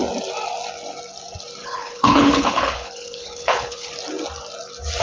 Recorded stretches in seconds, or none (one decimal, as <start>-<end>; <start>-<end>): 0.0-1.6; 3.9-5.0